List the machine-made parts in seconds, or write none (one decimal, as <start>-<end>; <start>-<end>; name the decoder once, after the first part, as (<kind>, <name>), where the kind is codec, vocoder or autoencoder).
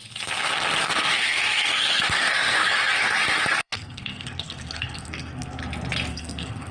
0.8-2.6 (codec, SNAC); 3.6-5.6; 6.1-6.7